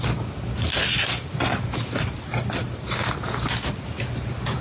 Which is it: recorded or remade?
recorded